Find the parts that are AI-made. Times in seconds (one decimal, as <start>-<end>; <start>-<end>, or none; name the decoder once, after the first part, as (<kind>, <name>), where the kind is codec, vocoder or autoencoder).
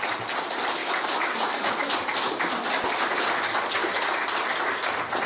0.8-1.9 (autoencoder, DAC-VAE)